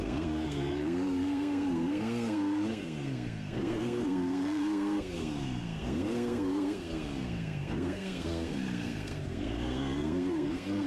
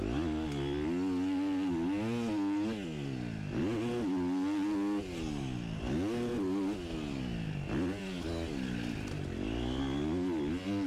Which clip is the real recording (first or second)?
second